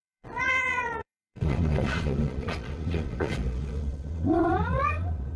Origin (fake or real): fake